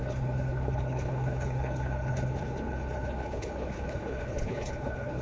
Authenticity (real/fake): fake